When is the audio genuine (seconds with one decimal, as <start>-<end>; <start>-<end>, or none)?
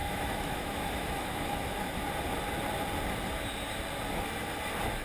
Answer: 1.8-5.0